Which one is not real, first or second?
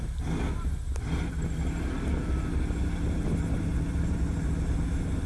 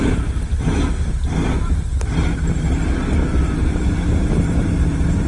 second